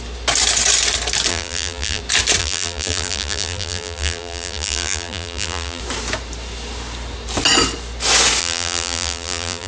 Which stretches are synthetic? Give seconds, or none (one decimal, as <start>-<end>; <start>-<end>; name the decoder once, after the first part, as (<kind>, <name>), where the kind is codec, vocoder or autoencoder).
1.3-2.0 (vocoder, BigVGAN v2); 2.4-5.8; 8.4-9.7